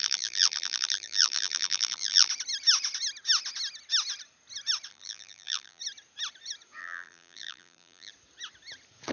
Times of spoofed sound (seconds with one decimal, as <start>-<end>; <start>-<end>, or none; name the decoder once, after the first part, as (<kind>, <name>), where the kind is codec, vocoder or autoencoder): 0.0-2.3 (vocoder, BigVGAN v2); 4.9-5.8; 6.8-8.1